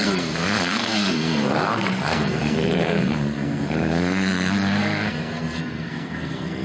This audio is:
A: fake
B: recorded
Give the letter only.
A